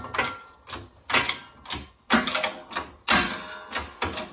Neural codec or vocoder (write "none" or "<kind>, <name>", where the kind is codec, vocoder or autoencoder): none